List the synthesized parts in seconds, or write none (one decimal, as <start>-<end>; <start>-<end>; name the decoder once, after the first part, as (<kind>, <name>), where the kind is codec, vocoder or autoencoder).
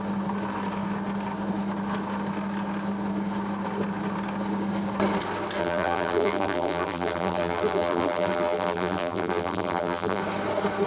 5.6-10.2 (vocoder, BigVGAN v2)